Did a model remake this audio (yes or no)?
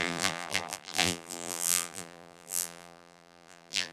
yes